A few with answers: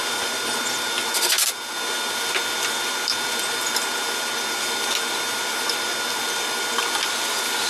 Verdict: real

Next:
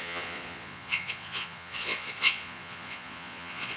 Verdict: fake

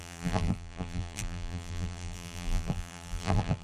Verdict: fake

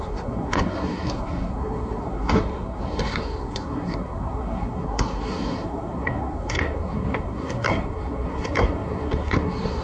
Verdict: fake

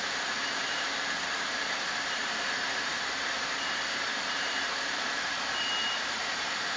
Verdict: fake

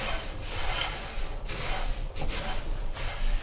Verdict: real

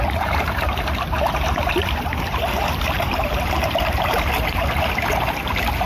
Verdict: fake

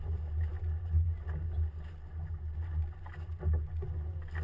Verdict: real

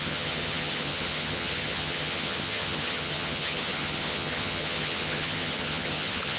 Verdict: fake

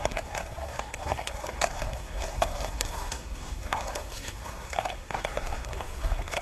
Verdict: fake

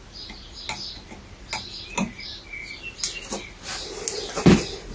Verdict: real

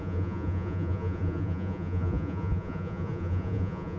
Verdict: fake